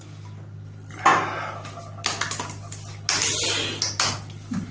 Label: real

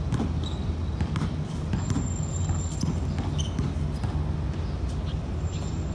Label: real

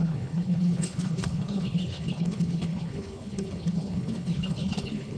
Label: fake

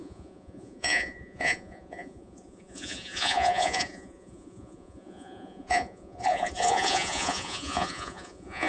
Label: fake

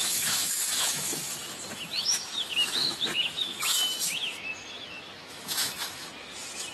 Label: fake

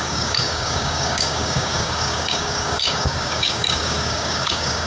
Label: fake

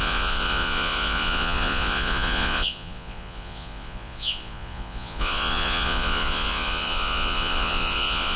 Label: fake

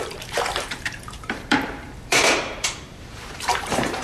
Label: fake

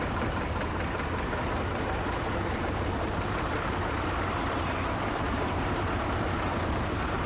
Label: fake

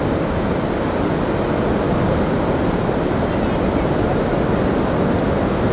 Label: real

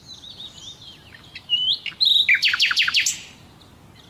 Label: real